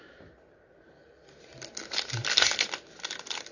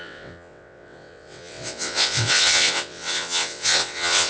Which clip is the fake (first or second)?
second